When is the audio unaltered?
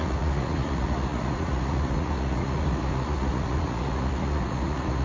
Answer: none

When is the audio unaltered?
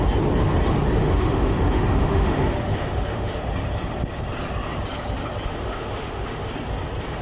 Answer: 0.0-1.0; 3.4-5.5; 6.5-7.2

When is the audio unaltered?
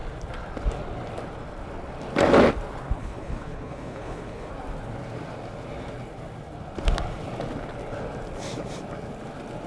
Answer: 0.0-3.0; 4.5-9.7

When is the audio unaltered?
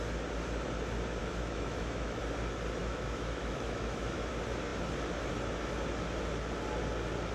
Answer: 0.0-1.2; 2.2-2.8; 4.3-7.3